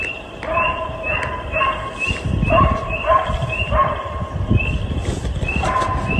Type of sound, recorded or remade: remade